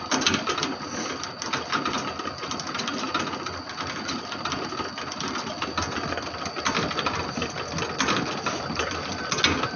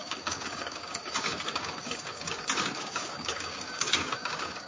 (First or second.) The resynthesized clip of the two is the second